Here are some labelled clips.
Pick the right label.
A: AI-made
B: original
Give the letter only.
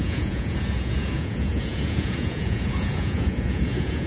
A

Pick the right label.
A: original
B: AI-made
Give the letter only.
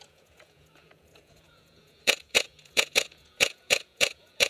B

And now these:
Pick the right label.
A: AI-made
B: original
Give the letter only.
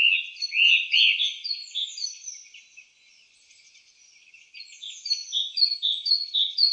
A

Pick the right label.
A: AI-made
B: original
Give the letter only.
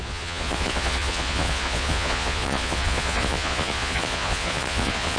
A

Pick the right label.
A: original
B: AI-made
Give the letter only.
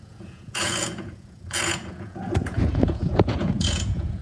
B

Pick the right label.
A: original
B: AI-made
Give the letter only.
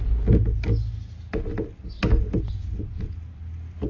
A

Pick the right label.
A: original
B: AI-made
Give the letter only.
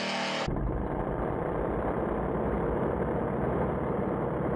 A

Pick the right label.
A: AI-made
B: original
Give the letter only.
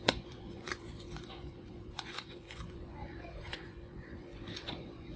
A